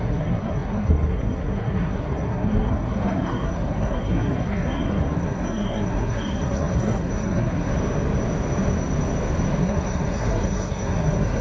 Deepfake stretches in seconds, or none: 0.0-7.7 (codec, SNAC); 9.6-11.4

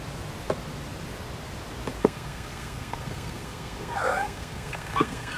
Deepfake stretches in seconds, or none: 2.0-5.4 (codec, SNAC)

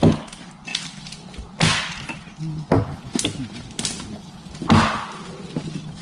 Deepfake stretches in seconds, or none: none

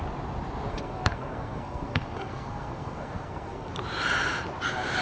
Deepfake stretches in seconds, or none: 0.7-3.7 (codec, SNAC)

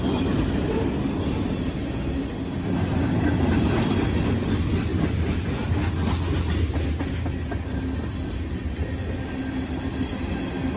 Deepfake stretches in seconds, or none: none